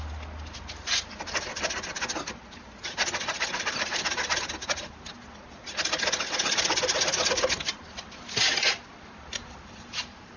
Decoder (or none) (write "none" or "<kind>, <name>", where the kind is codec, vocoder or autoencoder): none